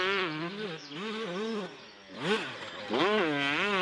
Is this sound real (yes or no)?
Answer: yes